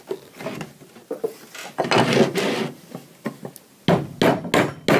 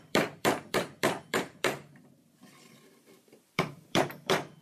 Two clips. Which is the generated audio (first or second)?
second